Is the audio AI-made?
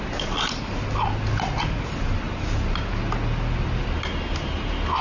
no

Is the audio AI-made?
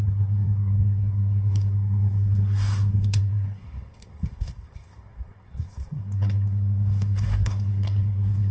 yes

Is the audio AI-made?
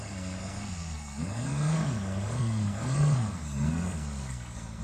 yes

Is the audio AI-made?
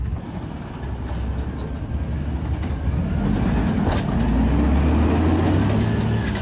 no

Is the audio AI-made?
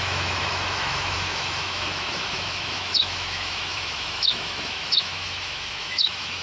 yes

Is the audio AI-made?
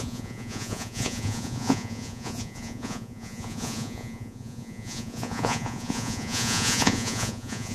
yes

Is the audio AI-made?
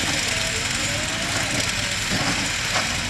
no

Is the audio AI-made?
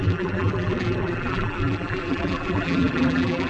yes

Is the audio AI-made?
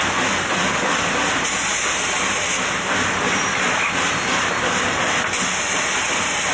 no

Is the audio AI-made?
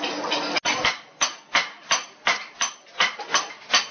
no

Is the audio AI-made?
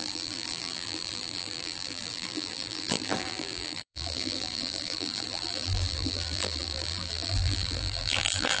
yes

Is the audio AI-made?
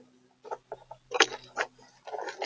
no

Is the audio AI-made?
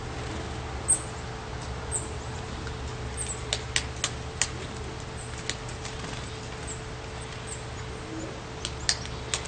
no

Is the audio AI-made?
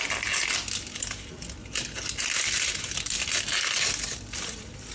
no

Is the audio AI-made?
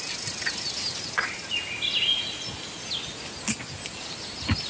no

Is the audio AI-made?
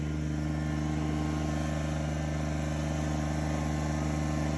no